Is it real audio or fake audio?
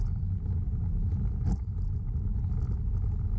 real